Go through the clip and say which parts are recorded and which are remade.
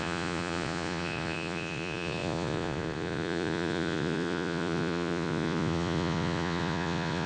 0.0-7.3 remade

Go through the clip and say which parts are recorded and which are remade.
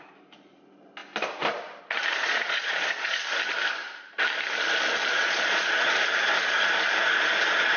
0.0-2.2 recorded; 2.2-3.2 remade; 3.2-5.2 recorded; 5.2-5.9 remade; 5.9-7.8 recorded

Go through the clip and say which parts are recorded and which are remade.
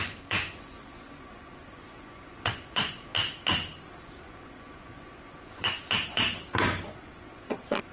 0.0-3.1 remade; 3.1-4.0 recorded; 4.0-5.8 remade; 5.8-7.0 recorded; 7.0-7.9 remade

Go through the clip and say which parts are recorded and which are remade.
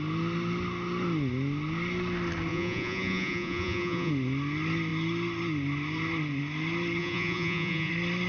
0.0-2.5 recorded; 2.5-4.1 remade; 4.1-7.0 recorded; 7.0-7.9 remade; 7.9-8.3 recorded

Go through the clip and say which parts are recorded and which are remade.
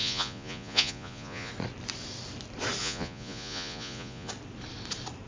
0.0-1.5 remade; 1.5-2.8 recorded; 2.8-4.3 remade; 4.3-5.3 recorded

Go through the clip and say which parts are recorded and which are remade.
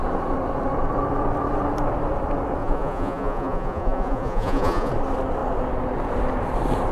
0.0-2.6 recorded; 2.6-4.9 remade; 4.9-6.9 recorded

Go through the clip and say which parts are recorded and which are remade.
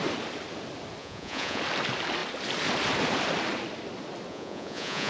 0.0-1.0 recorded; 1.0-1.6 remade; 1.6-4.3 recorded; 4.3-5.1 remade